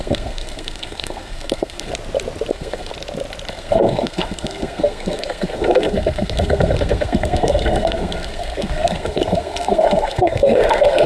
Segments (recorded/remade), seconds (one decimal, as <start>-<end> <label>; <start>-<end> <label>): 0.0-1.9 remade; 1.9-2.5 recorded; 2.5-2.9 remade; 2.9-3.5 recorded; 3.5-11.1 remade